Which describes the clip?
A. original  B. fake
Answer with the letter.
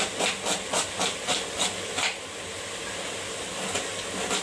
A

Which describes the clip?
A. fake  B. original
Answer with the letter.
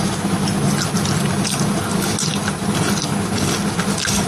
B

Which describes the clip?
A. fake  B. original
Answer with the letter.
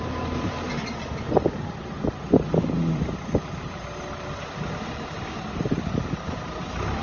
B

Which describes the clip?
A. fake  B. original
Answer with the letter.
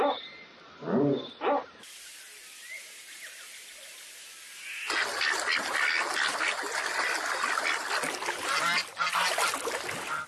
B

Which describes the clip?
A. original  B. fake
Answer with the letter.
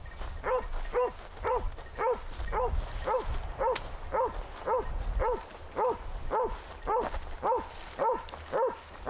A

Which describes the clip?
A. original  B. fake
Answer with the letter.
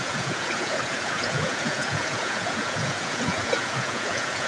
B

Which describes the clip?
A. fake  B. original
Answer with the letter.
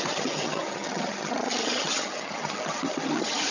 A